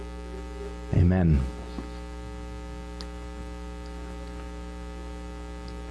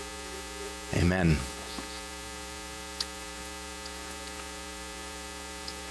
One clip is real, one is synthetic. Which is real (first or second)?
first